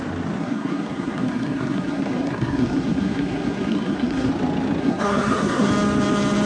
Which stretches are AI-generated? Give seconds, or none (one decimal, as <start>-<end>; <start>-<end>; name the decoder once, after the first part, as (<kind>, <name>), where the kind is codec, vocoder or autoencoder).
0.4-4.3 (codec, SNAC); 4.8-5.7

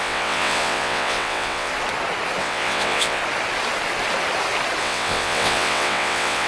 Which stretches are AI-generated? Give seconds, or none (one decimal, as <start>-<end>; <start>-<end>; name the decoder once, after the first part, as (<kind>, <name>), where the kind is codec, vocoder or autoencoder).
0.0-1.7 (vocoder, WaveNeXt); 2.4-3.2; 4.8-6.5